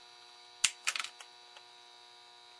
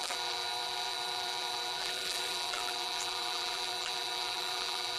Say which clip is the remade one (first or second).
second